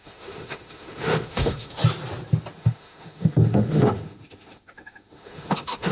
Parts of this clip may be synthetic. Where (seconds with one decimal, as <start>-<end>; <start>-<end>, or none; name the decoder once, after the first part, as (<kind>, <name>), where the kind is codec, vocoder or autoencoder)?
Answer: 0.0-1.8 (autoencoder, DAC-VAE); 2.6-5.9